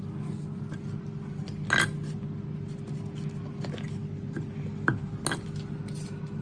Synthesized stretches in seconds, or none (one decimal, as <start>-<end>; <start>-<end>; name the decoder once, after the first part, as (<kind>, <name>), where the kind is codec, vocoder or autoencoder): none